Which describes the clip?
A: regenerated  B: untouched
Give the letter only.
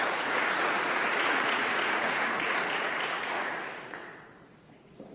A